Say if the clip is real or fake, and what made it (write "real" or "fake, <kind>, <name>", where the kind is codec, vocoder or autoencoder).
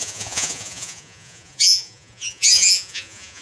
fake, vocoder, Vocos